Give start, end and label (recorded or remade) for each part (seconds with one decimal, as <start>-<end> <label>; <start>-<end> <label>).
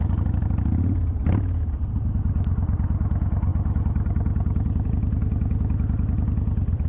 0.0-3.5 recorded; 3.5-4.9 remade; 4.9-6.9 recorded